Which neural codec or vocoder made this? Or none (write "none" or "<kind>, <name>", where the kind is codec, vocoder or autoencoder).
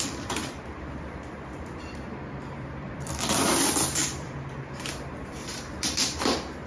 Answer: vocoder, BigVGAN v2